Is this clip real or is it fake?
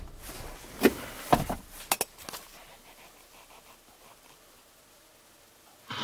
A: real